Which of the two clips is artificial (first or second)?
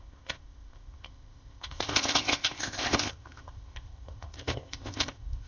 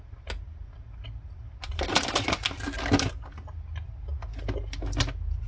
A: first